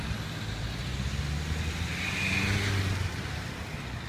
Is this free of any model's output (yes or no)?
yes